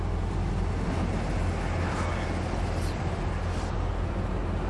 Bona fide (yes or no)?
yes